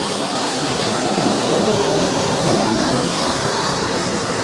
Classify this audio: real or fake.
fake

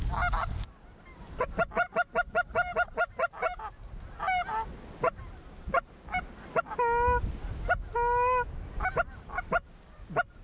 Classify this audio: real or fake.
real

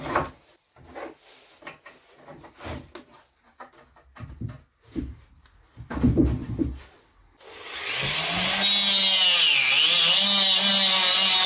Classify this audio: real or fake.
real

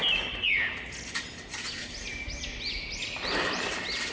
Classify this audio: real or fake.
real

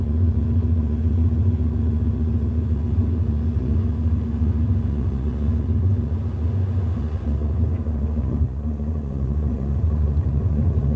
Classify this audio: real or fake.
fake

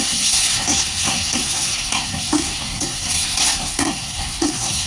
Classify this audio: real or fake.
fake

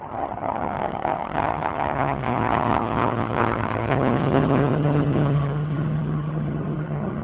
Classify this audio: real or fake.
fake